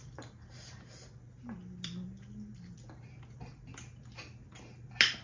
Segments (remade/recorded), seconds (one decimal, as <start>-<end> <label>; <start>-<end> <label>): 0.0-0.9 remade; 0.9-5.2 recorded